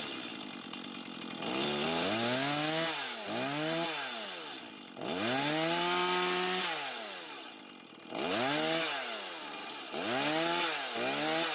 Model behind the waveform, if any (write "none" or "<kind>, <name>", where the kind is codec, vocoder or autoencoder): none